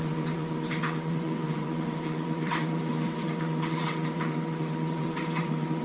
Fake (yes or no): yes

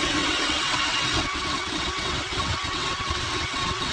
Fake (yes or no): yes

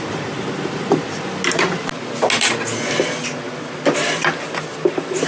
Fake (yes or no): no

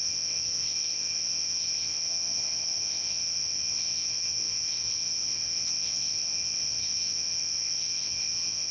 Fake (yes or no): yes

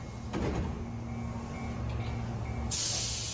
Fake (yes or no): no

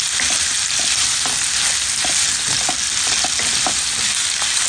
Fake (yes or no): no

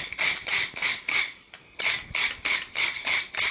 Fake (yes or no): no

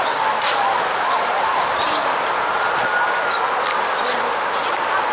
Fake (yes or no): no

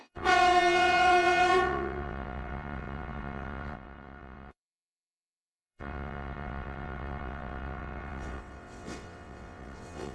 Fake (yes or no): yes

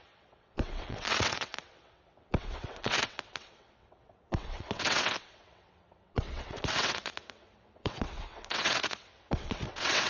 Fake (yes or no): yes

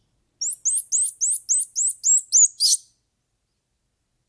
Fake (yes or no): no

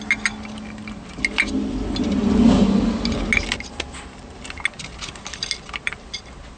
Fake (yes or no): no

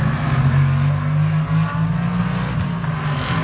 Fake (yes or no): no